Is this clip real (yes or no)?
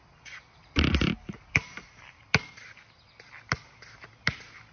yes